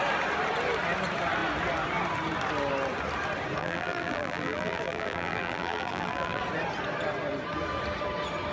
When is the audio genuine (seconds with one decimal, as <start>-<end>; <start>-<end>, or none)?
0.0-3.6; 6.4-8.5